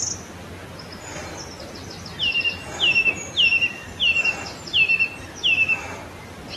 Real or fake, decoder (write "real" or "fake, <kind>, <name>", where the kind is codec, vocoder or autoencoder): real